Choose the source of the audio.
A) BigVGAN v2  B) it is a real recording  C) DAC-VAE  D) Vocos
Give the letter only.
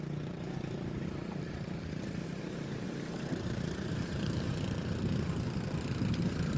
A